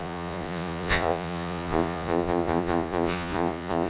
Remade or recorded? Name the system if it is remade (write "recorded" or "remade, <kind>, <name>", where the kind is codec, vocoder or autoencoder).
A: remade, vocoder, Vocos